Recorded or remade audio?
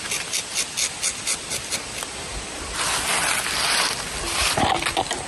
recorded